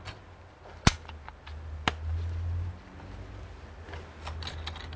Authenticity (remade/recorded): recorded